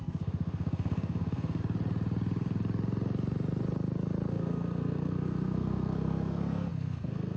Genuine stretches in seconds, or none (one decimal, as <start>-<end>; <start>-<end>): 1.6-4.3